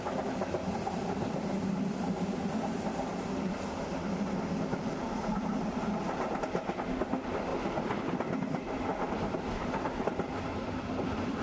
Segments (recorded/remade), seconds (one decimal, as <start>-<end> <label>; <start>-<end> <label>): 0.0-11.4 recorded